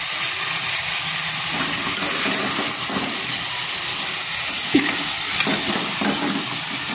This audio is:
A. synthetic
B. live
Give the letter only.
B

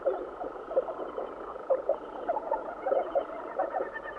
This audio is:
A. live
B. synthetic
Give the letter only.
B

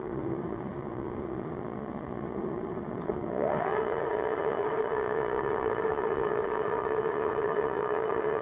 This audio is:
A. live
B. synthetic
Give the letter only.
B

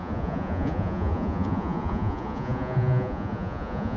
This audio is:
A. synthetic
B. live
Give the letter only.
A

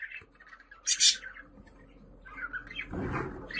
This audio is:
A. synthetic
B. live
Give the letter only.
B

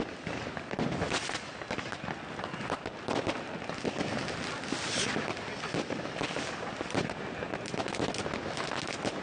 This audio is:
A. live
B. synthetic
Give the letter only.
A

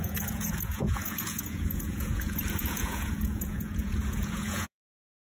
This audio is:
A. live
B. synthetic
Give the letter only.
B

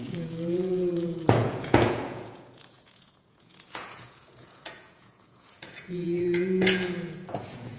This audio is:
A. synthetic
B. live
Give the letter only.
A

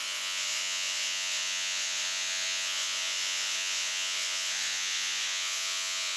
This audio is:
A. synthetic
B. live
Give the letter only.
A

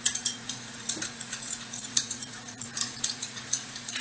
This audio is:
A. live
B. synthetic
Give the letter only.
B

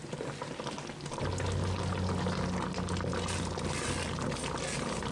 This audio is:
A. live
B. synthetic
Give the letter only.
A